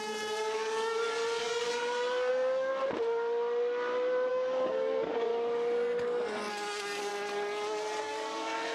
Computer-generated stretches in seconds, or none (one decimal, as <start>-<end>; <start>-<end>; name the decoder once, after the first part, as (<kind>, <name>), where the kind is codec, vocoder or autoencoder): 0.0-2.7 (codec, DAC); 4.3-5.3; 6.5-7.1; 8.0-8.7